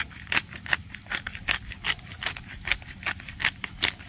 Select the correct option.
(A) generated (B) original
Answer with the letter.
B